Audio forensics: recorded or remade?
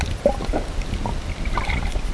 recorded